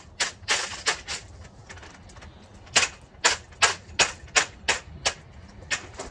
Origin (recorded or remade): recorded